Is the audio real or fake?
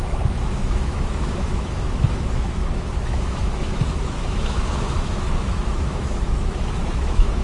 fake